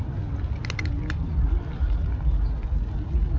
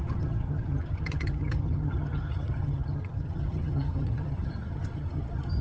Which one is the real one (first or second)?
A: first